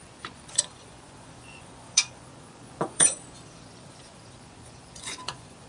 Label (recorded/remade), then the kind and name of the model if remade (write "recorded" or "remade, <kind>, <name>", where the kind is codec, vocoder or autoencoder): remade, vocoder, Vocos